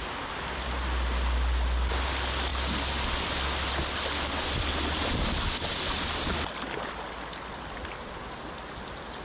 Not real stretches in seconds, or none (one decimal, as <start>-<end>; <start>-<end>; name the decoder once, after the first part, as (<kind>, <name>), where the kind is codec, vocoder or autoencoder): none